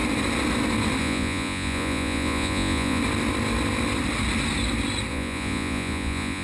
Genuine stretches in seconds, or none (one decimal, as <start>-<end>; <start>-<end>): 0.0-1.0; 3.0-5.1